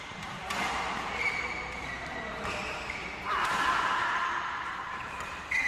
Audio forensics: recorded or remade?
remade